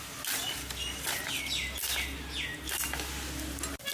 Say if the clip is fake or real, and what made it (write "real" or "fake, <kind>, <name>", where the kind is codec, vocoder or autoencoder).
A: real